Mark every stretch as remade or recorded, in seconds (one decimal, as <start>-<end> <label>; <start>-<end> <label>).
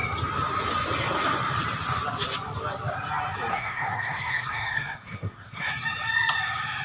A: 0.0-3.5 recorded; 3.5-5.7 remade; 5.7-6.8 recorded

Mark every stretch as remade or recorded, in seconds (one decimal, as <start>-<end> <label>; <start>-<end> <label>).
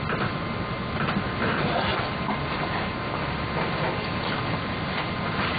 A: 0.0-5.6 recorded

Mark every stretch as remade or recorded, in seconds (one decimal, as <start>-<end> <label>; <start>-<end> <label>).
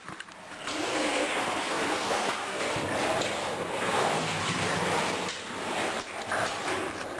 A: 0.0-0.9 recorded; 0.9-2.7 remade; 2.7-3.4 recorded; 3.4-4.4 remade; 4.4-7.2 recorded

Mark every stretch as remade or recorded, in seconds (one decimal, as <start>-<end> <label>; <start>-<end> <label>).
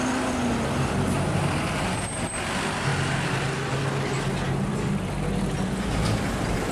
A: 0.0-6.7 recorded